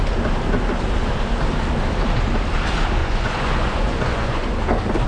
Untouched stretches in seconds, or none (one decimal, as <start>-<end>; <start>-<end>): 0.0-3.0; 4.6-5.1